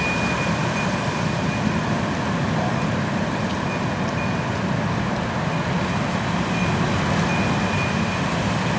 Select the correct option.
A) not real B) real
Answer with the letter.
B